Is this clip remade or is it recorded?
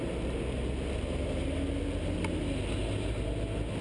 recorded